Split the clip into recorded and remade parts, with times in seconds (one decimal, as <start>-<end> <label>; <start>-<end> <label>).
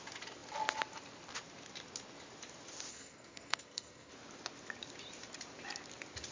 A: 0.0-2.9 recorded; 2.9-4.1 remade; 4.1-6.3 recorded